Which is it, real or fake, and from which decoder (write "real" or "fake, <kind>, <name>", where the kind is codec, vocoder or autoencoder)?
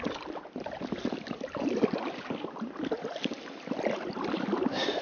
real